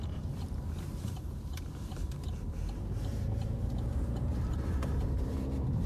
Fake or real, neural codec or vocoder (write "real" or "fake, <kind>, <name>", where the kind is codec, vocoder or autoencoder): fake, vocoder, BigVGAN v2